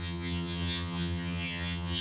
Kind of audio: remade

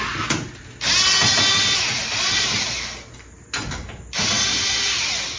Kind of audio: recorded